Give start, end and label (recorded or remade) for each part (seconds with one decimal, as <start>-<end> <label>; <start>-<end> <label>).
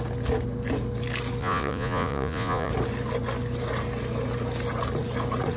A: 0.0-1.4 recorded; 1.4-2.7 remade; 2.7-5.6 recorded